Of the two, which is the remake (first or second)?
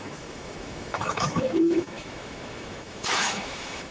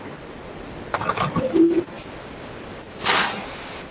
first